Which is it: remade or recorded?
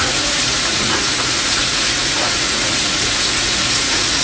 remade